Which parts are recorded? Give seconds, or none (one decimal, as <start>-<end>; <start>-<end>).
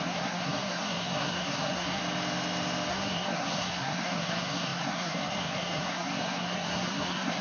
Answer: 2.0-2.9